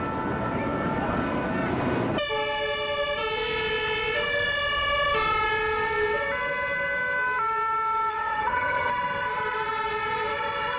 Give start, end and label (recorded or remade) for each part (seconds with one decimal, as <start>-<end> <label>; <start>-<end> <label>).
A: 0.0-8.1 recorded; 8.1-8.9 remade; 8.9-10.8 recorded